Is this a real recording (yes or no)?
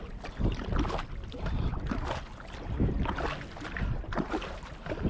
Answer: yes